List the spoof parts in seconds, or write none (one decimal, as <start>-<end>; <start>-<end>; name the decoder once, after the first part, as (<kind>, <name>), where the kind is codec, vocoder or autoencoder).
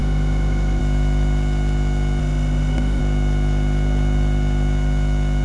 0.0-0.8 (autoencoder, DAC-VAE); 2.2-3.0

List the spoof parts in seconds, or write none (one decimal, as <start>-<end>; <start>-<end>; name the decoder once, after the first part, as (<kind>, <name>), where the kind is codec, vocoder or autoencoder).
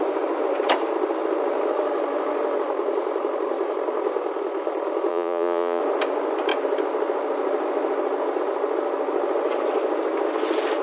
5.1-5.8 (vocoder, Vocos)